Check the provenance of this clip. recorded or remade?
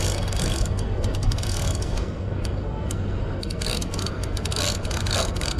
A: remade